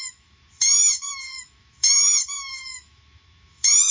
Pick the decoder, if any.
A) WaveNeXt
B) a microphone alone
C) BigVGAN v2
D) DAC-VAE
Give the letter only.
D